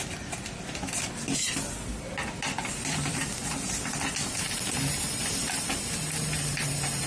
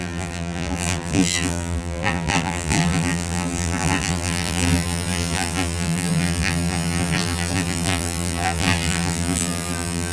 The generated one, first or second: second